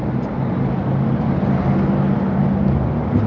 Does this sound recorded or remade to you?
recorded